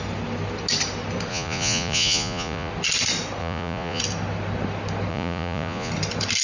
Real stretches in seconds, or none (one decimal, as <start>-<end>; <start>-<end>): 0.0-1.3; 2.7-3.4; 4.0-5.1; 5.9-6.4